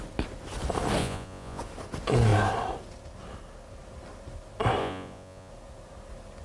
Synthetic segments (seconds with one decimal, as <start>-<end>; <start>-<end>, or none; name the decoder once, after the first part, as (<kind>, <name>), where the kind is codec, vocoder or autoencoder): 1.0-1.6 (vocoder, Vocos); 4.8-5.5